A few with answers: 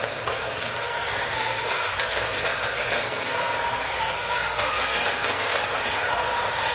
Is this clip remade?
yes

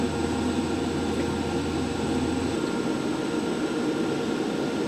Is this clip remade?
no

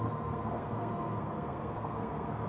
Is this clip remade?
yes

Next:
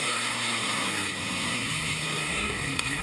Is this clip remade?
yes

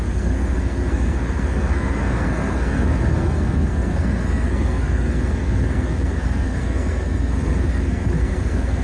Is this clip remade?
yes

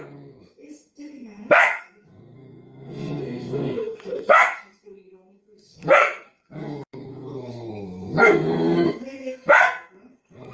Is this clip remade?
yes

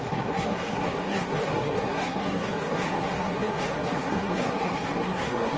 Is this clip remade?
yes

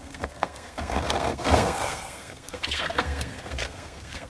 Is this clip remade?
yes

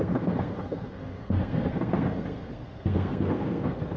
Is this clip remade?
yes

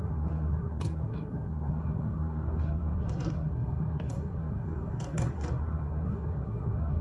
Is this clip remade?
yes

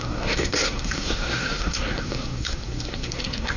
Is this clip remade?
yes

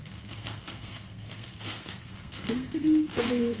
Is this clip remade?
yes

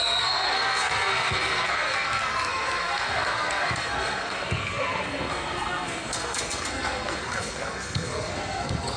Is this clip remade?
yes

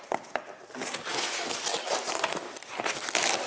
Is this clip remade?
no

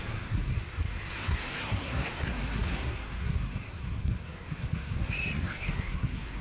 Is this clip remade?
yes